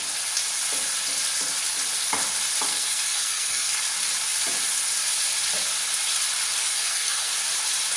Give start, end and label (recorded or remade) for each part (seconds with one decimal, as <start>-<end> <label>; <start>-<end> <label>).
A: 0.0-2.7 recorded; 2.7-3.8 remade; 3.8-6.6 recorded; 6.6-7.3 remade; 7.3-8.0 recorded

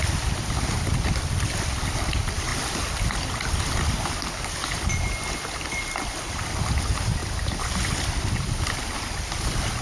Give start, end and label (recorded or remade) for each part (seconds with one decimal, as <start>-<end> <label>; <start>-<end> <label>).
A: 0.0-9.8 recorded

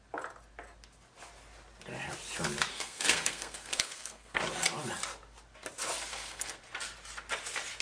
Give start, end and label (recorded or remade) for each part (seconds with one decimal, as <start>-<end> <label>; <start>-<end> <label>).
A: 0.0-2.7 recorded; 2.7-4.4 remade; 4.4-6.1 recorded; 6.1-6.6 remade; 6.6-7.8 recorded